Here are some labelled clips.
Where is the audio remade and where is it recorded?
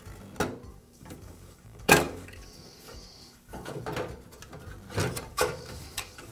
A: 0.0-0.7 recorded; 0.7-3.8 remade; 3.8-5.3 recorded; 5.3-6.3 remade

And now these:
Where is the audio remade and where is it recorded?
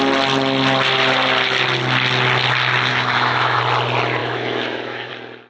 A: 0.0-2.9 recorded; 2.9-3.6 remade; 3.6-4.2 recorded; 4.2-5.1 remade; 5.1-5.5 recorded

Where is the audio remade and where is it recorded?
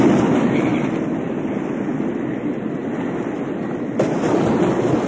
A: 0.0-0.7 remade; 0.7-1.2 recorded; 1.2-1.9 remade; 1.9-2.4 recorded; 2.4-2.8 remade; 2.8-3.4 recorded; 3.4-5.1 remade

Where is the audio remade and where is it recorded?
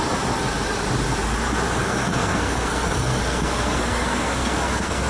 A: 0.0-1.8 recorded; 1.8-5.1 remade